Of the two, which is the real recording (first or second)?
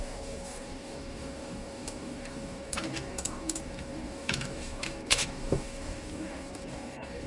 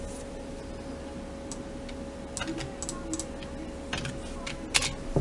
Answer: second